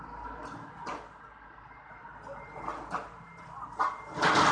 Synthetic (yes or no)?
no